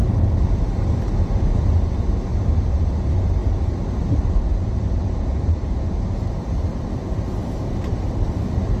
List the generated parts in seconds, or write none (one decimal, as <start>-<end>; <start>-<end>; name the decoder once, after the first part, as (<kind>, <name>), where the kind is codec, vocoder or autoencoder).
none